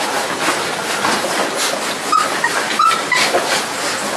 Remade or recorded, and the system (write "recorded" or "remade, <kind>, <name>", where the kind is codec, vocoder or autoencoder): recorded